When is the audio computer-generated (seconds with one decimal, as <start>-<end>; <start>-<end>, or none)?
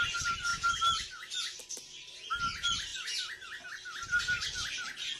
none